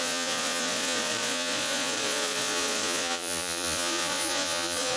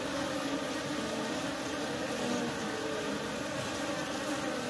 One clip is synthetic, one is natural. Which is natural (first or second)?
second